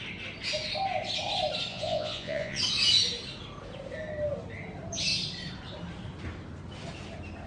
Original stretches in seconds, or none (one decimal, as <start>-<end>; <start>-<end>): 0.0-1.7; 2.6-7.5